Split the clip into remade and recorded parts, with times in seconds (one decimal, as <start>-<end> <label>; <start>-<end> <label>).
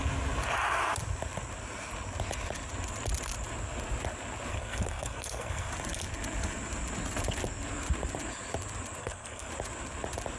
0.0-4.5 recorded; 4.5-5.7 remade; 5.7-9.0 recorded; 9.0-9.5 remade; 9.5-10.4 recorded